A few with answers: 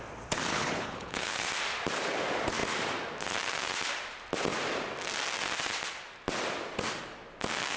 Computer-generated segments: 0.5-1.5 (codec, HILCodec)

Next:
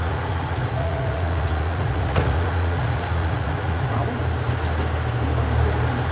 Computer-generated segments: 0.0-4.0 (vocoder, Vocos)

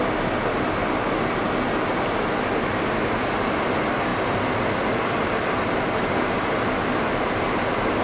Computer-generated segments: none

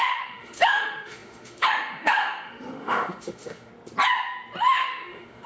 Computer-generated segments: 0.0-3.7 (autoencoder, DAC-VAE); 4.6-5.5

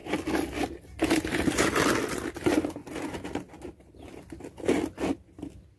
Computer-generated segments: none

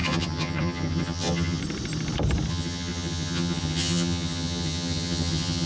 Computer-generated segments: 0.0-1.6 (vocoder, HiFi-GAN); 2.5-5.7

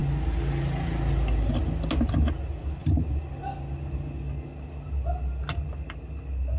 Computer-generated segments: none

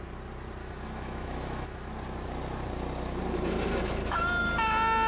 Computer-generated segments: 0.6-1.9 (autoencoder, DAC-VAE); 3.7-4.2